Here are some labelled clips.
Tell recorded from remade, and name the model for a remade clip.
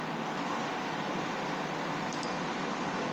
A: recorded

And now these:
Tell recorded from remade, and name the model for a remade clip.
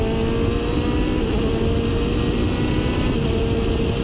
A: recorded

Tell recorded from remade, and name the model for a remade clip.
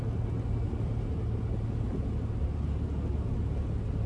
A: recorded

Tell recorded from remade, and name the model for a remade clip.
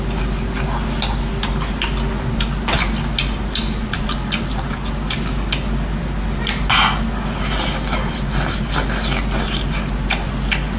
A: recorded